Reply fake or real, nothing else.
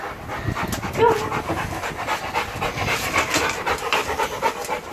real